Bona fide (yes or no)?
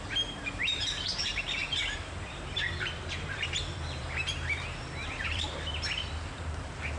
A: no